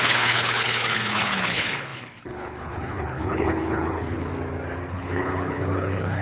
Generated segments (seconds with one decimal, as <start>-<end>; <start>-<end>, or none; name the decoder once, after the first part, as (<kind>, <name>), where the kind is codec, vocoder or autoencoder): 0.0-4.3 (codec, HILCodec); 4.9-6.2